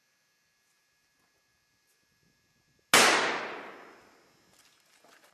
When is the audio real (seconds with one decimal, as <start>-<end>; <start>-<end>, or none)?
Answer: 0.0-5.3